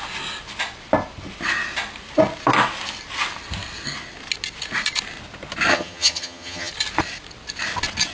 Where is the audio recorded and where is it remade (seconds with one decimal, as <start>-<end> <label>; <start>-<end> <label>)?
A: 0.0-5.7 recorded; 5.7-6.7 remade; 6.7-8.1 recorded